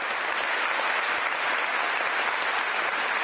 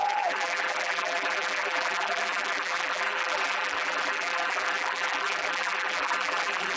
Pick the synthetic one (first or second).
second